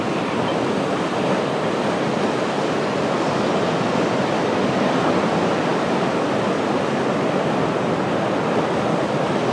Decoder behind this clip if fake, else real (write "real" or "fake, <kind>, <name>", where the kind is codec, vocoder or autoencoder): real